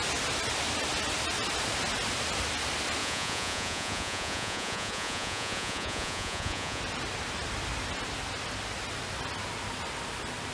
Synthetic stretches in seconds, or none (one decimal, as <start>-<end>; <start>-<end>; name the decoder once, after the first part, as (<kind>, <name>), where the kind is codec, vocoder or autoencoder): 3.0-6.8 (vocoder, Vocos)